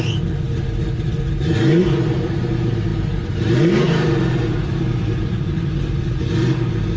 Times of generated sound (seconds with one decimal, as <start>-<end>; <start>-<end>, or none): 1.8-2.3; 2.9-6.2